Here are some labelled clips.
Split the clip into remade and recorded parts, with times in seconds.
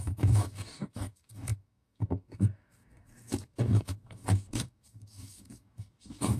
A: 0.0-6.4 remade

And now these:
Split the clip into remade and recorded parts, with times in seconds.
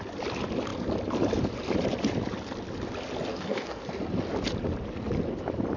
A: 0.0-3.3 recorded; 3.3-3.8 remade; 3.8-5.8 recorded